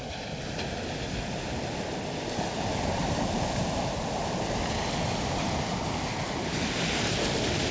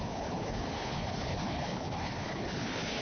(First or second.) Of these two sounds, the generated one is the second